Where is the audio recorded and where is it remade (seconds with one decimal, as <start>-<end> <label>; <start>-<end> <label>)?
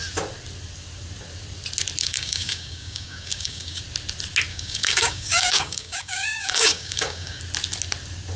0.0-2.0 recorded; 2.0-3.8 remade; 3.8-4.5 recorded; 4.5-7.4 remade; 7.4-8.4 recorded